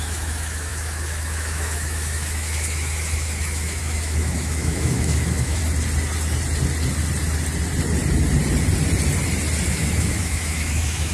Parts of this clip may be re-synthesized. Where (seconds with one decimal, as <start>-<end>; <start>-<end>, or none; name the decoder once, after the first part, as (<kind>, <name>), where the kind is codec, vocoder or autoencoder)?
0.0-5.6 (autoencoder, DAC-VAE); 9.7-11.1